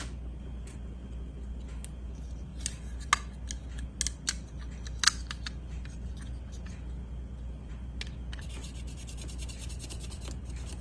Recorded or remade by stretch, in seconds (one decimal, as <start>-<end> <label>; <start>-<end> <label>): 0.0-10.8 recorded